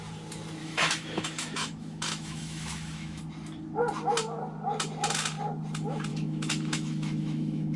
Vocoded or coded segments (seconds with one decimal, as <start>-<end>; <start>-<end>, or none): 0.6-3.2; 6.1-7.8